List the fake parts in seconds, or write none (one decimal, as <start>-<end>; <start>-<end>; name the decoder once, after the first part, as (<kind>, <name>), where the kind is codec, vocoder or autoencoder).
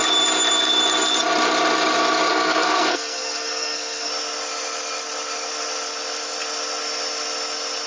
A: 2.3-4.1 (codec, SNAC)